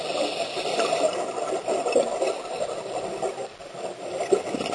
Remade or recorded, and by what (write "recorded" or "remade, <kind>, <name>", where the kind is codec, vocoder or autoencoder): recorded